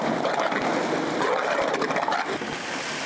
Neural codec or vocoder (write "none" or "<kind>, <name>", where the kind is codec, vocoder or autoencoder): none